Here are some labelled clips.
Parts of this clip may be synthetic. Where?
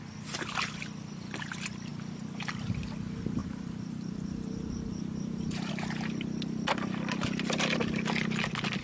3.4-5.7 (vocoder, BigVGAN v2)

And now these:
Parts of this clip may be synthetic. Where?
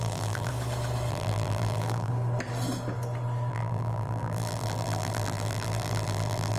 0.0-0.5 (vocoder, BigVGAN v2); 1.1-2.1; 3.5-6.6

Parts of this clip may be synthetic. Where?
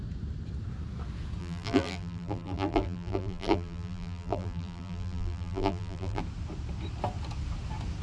1.4-6.2 (vocoder, BigVGAN v2)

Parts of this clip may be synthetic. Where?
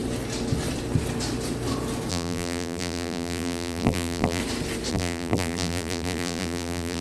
2.1-4.4 (vocoder, BigVGAN v2); 4.9-7.0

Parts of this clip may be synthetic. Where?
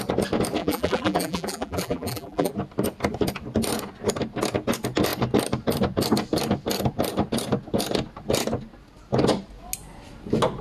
0.6-2.5 (vocoder, BigVGAN v2)